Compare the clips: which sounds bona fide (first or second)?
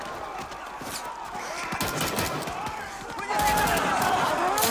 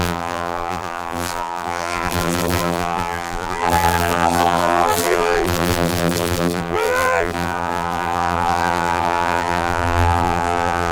first